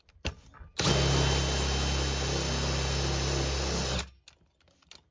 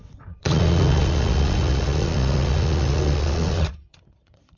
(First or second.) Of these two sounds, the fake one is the second